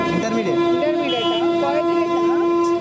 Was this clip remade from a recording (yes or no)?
no